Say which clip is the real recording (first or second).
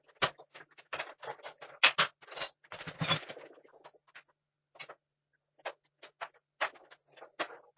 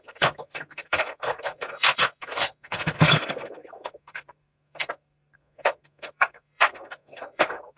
first